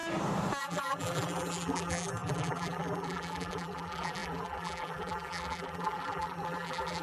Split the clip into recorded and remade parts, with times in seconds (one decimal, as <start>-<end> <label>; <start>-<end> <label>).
0.0-0.6 recorded; 0.6-7.0 remade